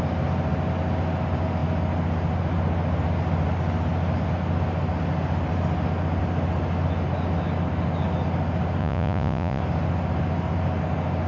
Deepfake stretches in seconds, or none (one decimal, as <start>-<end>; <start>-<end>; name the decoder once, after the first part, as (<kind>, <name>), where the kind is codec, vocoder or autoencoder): 8.8-9.6 (vocoder, Vocos)